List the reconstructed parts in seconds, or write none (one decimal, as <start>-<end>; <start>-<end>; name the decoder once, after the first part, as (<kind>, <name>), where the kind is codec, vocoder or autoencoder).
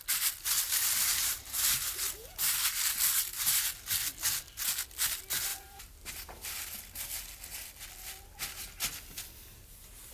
1.1-3.6 (vocoder, BigVGAN v2); 5.5-6.5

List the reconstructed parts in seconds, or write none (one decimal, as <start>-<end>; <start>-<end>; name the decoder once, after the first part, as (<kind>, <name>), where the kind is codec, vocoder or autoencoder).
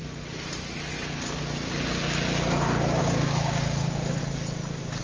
3.0-4.2 (codec, DAC)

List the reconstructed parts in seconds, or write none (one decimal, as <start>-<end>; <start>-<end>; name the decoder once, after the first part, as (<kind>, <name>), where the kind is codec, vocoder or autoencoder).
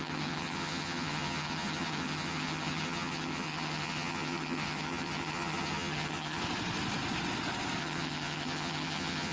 0.0-6.4 (vocoder, HiFi-GAN); 7.8-9.3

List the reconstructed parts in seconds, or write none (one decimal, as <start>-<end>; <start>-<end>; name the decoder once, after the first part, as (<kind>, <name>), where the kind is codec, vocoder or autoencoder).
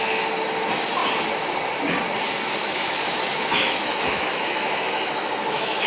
2.6-5.9 (autoencoder, DAC-VAE)